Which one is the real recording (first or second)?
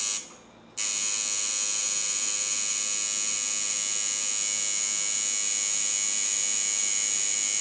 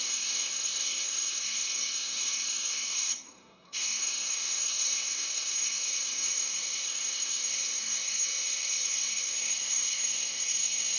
first